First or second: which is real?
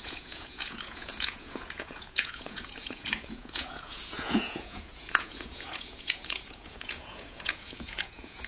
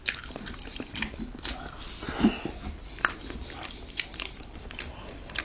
second